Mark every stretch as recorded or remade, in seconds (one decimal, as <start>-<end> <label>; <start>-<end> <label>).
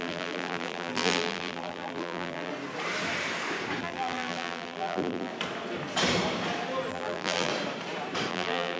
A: 0.0-2.5 remade; 2.5-3.8 recorded; 3.8-5.3 remade; 5.3-6.9 recorded; 6.9-7.5 remade; 7.5-8.3 recorded; 8.3-8.8 remade